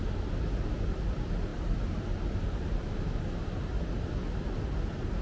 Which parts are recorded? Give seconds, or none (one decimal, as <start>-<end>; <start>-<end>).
0.0-5.2